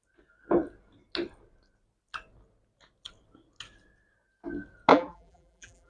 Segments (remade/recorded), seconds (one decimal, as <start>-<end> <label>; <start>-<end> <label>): 0.0-4.9 recorded; 4.9-5.9 remade